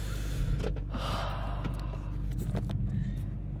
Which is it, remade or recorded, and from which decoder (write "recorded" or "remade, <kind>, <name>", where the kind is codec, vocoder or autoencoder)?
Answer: recorded